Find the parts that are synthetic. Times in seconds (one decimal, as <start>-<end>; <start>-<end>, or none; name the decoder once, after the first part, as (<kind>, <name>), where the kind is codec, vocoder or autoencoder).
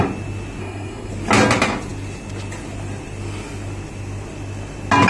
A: 0.6-1.1 (codec, SNAC)